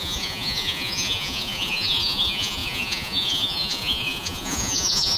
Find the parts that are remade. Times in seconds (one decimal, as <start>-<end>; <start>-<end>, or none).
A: 0.0-5.2